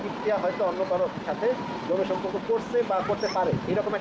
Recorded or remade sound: recorded